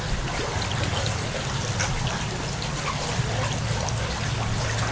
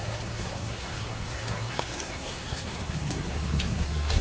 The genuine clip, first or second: first